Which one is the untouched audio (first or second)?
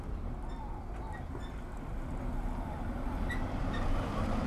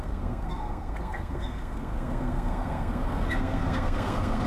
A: first